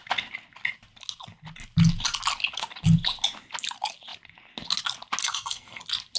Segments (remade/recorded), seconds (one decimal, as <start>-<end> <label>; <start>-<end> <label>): 0.0-5.2 recorded; 5.2-5.8 remade; 5.8-6.2 recorded